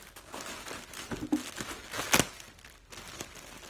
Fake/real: real